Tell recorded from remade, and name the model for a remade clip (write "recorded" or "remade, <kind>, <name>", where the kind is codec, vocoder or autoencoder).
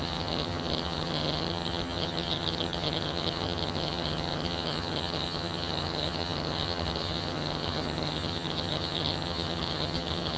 remade, vocoder, HiFi-GAN